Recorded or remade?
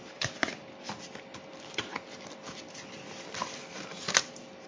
recorded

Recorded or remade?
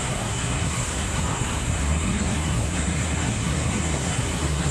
remade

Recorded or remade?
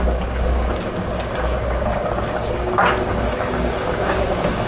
remade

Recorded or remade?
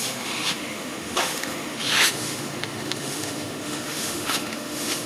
remade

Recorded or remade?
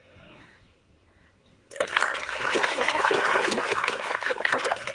remade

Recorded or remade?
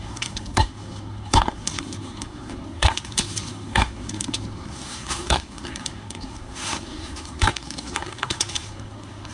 remade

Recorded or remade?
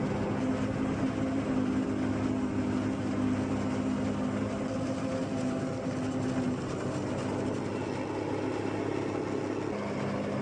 recorded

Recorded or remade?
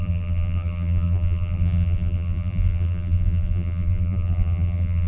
remade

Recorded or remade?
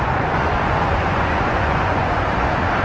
remade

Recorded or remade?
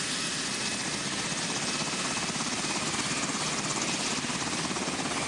recorded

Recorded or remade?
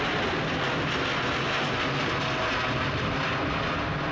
recorded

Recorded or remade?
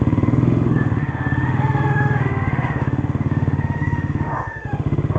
remade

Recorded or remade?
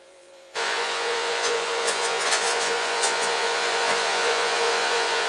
remade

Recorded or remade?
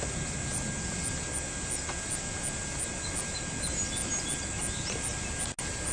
recorded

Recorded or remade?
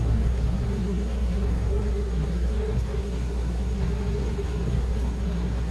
remade